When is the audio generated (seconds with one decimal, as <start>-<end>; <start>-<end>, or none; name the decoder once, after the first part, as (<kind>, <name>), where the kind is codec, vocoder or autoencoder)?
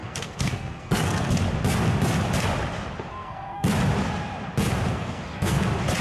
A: 0.0-1.3 (codec, SNAC); 3.1-3.7; 4.9-5.6